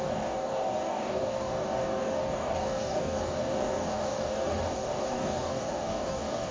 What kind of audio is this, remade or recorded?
remade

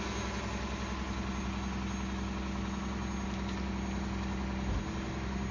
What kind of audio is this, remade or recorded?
recorded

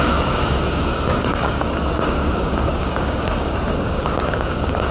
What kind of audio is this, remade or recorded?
remade